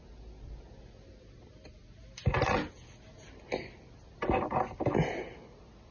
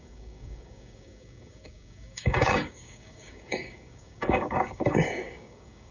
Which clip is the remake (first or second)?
second